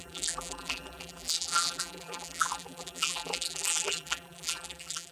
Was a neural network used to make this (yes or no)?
yes